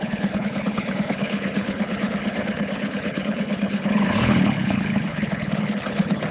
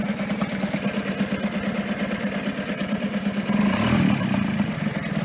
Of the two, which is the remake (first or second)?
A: first